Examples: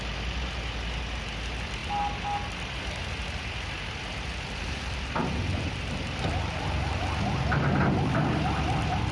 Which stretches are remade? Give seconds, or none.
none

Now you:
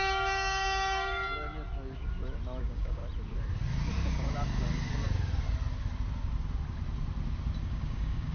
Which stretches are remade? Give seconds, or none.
0.0-1.2 (codec, DAC); 2.6-3.0; 7.6-8.3

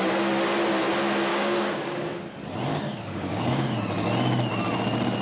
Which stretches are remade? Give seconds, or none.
1.3-2.2 (codec, DAC); 2.7-3.8

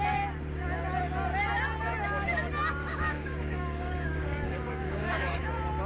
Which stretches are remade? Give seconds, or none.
2.9-5.4 (codec, DAC)

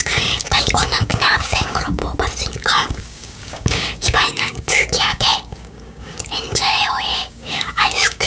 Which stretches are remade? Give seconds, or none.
0.0-2.0 (codec, DAC); 2.5-8.3

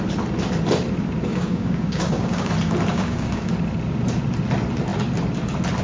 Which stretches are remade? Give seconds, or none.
1.3-2.5 (codec, DAC); 2.9-3.5